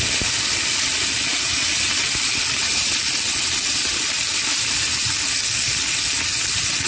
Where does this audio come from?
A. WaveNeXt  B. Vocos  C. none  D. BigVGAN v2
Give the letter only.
C